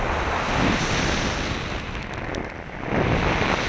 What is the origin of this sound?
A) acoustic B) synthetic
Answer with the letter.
A